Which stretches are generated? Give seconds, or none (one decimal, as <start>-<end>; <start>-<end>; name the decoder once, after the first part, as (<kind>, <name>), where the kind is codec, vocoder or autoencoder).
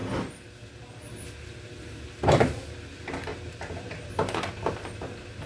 none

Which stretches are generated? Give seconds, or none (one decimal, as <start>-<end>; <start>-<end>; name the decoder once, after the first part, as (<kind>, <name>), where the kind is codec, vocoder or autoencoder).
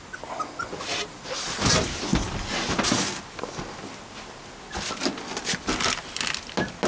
none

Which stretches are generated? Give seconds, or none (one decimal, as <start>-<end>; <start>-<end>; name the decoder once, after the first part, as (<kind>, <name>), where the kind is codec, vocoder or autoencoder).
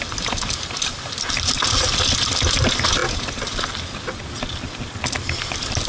none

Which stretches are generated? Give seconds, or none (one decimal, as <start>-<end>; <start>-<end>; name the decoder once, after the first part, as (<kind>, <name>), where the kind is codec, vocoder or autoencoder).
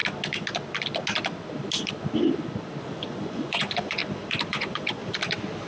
2.8-4.0 (vocoder, Vocos); 4.5-5.0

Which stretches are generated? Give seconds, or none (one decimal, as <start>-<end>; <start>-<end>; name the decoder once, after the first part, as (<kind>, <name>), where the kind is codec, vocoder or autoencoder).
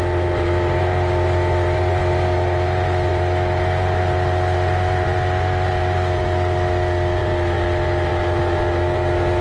none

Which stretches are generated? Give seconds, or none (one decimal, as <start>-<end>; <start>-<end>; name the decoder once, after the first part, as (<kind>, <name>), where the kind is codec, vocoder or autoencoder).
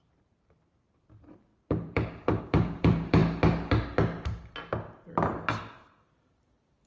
0.0-3.2 (vocoder, BigVGAN v2); 5.7-6.9